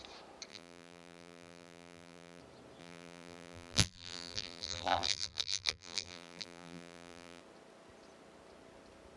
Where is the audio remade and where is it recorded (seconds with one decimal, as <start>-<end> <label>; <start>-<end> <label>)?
0.0-0.5 recorded; 0.5-2.4 remade; 2.4-2.8 recorded; 2.8-7.4 remade; 7.4-9.2 recorded

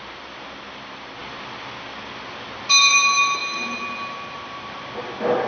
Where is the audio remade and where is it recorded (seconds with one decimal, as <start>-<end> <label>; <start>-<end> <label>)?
0.0-5.5 recorded

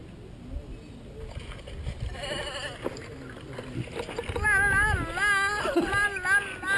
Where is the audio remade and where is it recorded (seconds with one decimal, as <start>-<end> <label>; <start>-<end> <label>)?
0.0-6.8 recorded

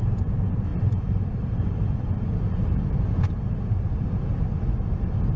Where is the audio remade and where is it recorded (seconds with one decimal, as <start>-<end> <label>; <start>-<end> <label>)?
0.0-5.4 recorded